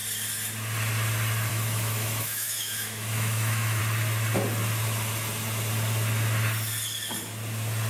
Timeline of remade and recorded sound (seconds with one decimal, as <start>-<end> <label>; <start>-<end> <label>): 0.0-1.5 recorded; 1.5-3.8 remade; 3.8-7.9 recorded